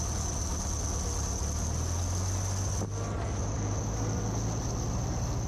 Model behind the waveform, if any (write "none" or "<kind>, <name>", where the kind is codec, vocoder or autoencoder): none